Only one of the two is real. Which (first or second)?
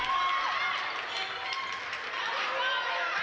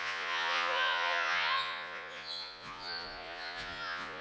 first